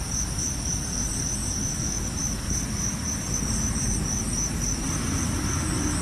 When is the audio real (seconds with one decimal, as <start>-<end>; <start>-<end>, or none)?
0.0-1.4; 4.9-6.0